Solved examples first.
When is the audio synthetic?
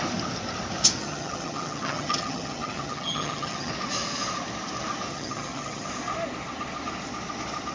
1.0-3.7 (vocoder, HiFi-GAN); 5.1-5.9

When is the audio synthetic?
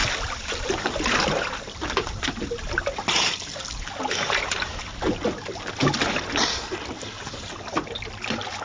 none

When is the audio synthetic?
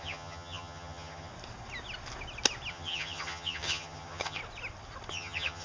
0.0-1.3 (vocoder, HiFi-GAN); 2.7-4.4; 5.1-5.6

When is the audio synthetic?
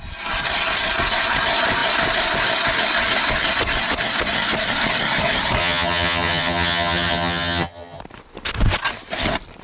5.6-8.0 (vocoder, HiFi-GAN)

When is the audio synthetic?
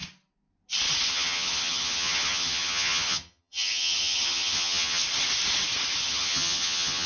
1.1-5.0 (vocoder, HiFi-GAN); 6.0-7.1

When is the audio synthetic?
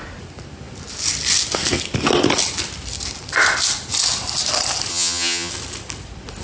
4.9-5.5 (vocoder, HiFi-GAN)